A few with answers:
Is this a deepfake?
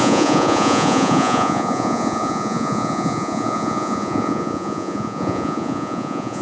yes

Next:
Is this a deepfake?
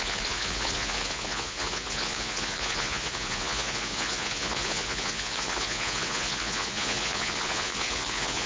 yes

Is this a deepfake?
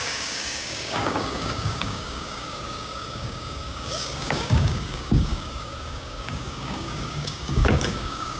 yes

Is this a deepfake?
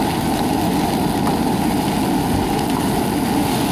no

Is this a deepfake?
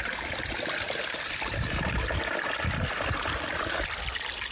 no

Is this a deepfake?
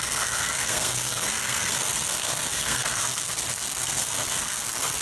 yes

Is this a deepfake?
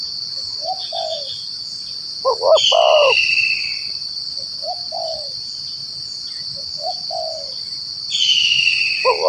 no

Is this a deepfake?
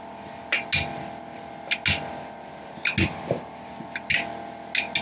no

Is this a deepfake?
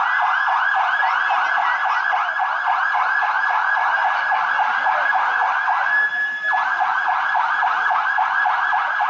no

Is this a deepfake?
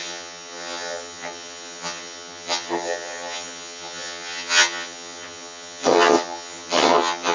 yes